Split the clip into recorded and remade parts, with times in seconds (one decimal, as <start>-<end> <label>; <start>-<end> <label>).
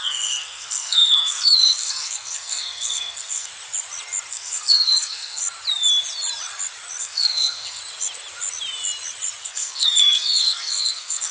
0.0-3.5 remade; 3.5-4.3 recorded; 4.3-5.4 remade; 5.4-7.0 recorded; 7.0-7.8 remade; 7.8-9.4 recorded; 9.4-11.3 remade